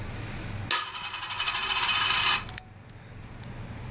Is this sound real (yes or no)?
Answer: yes